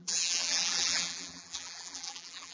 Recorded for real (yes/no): no